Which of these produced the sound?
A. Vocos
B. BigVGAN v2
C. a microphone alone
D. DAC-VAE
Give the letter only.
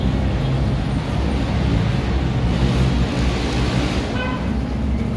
C